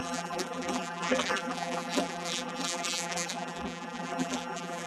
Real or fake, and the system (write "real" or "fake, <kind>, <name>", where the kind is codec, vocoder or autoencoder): fake, vocoder, BigVGAN v2